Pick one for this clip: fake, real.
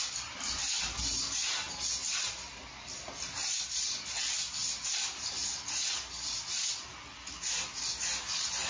real